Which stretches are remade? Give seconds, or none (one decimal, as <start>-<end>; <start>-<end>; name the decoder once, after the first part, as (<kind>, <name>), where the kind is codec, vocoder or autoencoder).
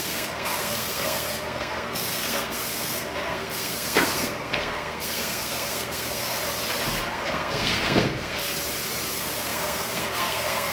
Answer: 0.0-6.4 (codec, SNAC); 7.1-8.4; 9.1-10.7